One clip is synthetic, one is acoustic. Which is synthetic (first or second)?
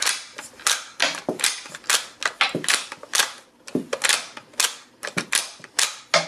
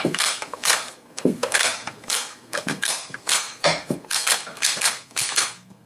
second